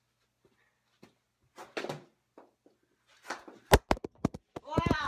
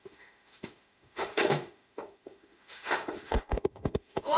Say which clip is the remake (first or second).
second